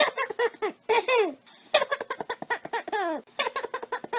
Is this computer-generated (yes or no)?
no